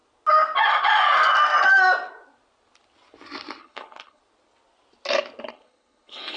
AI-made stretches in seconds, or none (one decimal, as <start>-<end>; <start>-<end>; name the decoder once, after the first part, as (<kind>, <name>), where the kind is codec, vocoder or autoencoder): 3.6-4.2 (codec, HILCodec); 5.5-6.4